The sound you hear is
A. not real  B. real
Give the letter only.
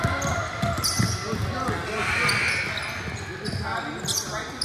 B